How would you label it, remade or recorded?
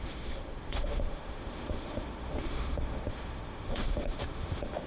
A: remade